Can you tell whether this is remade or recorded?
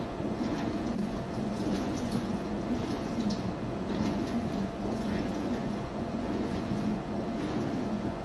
remade